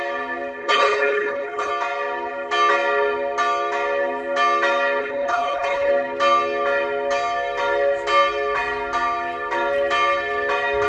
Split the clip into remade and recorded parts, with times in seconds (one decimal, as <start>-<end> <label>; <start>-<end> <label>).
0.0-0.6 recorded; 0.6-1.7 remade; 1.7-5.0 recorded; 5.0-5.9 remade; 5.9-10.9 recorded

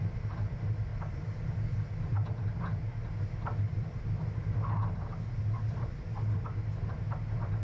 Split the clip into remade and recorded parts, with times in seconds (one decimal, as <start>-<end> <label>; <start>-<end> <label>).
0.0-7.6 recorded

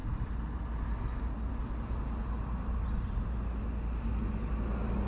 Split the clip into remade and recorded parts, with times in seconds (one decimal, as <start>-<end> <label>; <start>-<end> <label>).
0.0-5.1 recorded

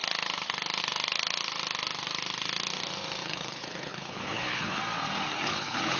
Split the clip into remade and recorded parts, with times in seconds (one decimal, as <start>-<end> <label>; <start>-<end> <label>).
0.0-3.2 recorded; 3.2-4.8 remade; 4.8-5.3 recorded; 5.3-6.0 remade

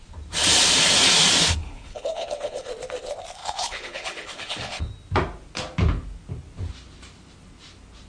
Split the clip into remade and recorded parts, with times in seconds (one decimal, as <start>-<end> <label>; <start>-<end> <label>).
0.0-1.6 recorded; 1.6-2.7 remade; 2.7-3.4 recorded; 3.4-4.9 remade; 4.9-8.1 recorded

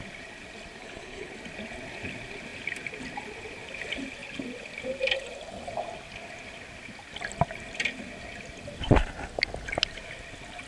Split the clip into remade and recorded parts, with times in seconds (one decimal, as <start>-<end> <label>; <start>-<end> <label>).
0.0-0.8 recorded; 0.8-1.3 remade; 1.3-10.7 recorded

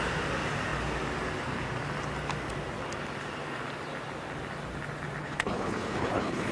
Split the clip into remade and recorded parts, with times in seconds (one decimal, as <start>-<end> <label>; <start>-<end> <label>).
0.0-5.2 recorded; 5.2-6.5 remade

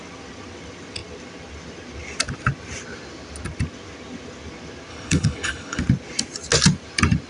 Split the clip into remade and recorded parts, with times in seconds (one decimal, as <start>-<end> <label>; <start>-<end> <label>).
0.0-4.9 recorded; 4.9-5.8 remade; 5.8-7.3 recorded